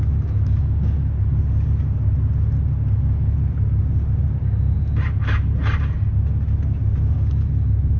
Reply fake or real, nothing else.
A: real